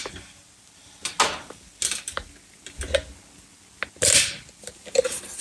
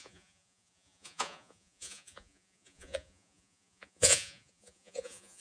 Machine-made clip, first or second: second